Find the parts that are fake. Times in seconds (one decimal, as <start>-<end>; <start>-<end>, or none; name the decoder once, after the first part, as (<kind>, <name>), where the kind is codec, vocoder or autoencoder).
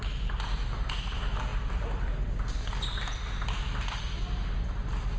none